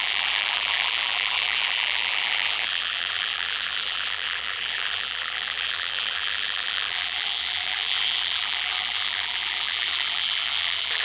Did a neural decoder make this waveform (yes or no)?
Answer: yes